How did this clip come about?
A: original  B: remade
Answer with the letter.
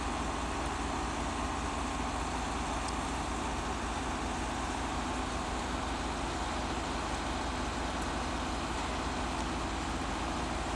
A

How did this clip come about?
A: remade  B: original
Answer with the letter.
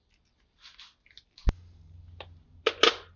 B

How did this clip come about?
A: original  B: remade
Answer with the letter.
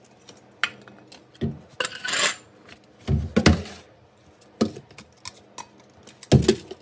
A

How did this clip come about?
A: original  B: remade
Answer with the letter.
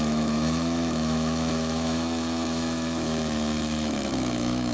B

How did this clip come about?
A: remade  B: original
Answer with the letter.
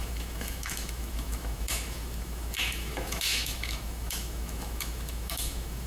A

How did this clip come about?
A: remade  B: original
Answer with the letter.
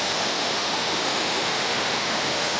A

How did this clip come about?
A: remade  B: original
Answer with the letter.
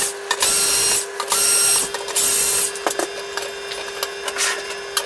B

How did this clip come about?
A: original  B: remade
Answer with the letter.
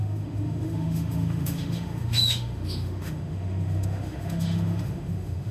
B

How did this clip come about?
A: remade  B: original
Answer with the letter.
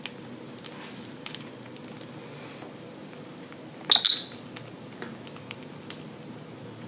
B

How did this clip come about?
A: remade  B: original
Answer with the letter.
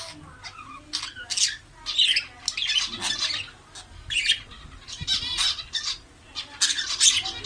B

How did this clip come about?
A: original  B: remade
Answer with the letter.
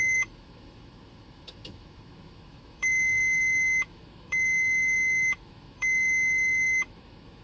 B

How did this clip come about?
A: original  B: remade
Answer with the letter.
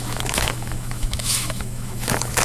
B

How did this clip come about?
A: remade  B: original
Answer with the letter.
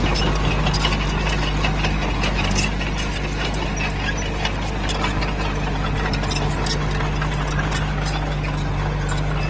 B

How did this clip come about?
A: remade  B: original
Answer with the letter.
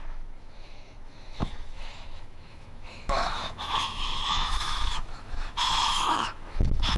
A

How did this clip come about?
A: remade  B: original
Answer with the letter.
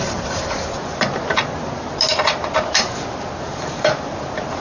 B